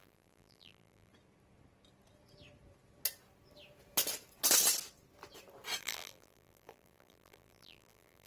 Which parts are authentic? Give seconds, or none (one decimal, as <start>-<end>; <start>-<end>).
1.1-5.8